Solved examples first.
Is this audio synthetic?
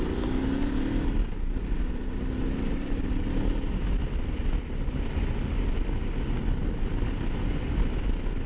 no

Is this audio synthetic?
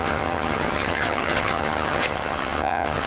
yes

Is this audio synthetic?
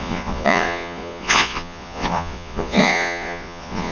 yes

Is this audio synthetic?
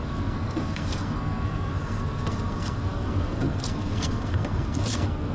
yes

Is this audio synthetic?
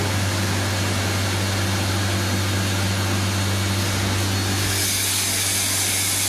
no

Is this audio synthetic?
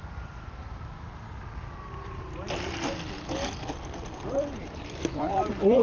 yes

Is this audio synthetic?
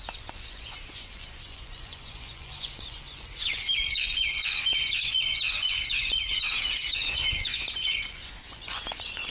yes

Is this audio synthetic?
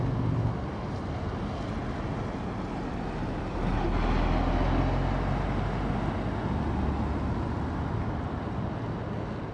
no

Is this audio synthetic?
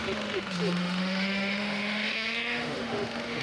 yes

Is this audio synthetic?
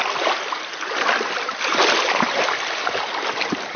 no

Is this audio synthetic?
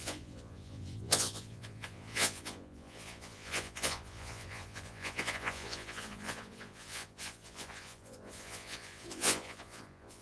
yes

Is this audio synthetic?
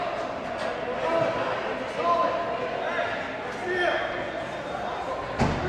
no